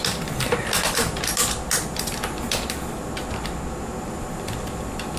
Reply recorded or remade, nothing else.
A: remade